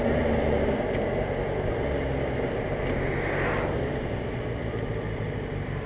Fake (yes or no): no